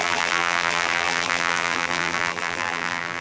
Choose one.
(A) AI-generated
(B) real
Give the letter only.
A